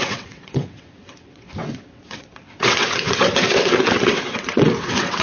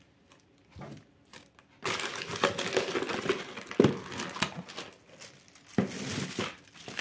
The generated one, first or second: first